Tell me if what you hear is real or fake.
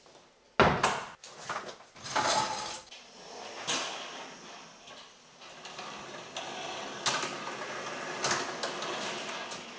real